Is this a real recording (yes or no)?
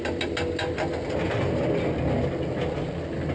yes